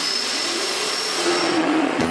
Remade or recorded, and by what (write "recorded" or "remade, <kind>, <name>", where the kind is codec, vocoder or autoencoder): remade, vocoder, Vocos